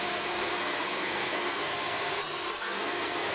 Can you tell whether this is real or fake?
fake